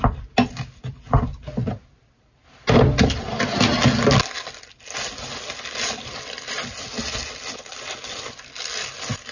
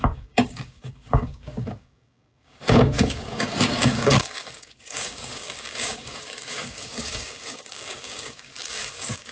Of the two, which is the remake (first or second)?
second